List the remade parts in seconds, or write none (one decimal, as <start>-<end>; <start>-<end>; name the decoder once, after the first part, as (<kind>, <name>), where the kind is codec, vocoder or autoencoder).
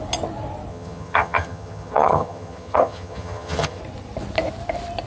0.7-3.8 (vocoder, HiFi-GAN)